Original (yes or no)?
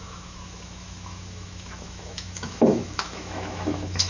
no